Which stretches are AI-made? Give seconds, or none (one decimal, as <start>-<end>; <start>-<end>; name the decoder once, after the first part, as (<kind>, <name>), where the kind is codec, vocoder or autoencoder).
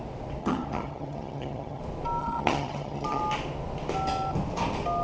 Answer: 0.4-1.8 (vocoder, HiFi-GAN); 2.2-3.2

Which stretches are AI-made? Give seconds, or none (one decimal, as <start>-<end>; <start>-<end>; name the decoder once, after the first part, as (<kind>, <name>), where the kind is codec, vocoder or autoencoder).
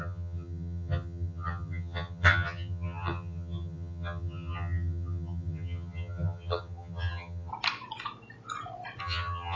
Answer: 0.0-7.5 (vocoder, HiFi-GAN); 9.0-9.6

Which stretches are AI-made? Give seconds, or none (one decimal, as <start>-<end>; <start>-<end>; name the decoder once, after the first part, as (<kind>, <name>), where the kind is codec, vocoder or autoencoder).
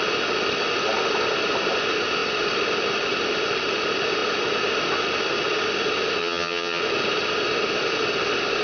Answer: 6.2-6.8 (vocoder, HiFi-GAN)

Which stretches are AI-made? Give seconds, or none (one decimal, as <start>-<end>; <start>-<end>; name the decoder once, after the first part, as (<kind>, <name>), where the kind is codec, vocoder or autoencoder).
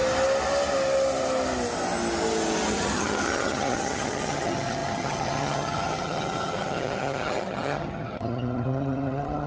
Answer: 2.7-9.5 (vocoder, HiFi-GAN)